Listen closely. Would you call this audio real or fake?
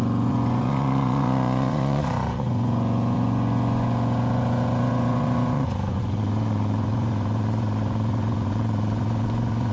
fake